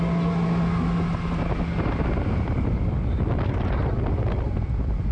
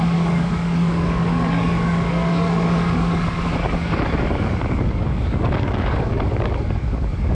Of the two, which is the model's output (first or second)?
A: second